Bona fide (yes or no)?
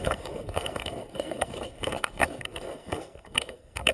no